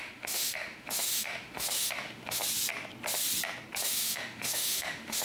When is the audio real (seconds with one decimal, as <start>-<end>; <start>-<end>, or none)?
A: 2.4-3.8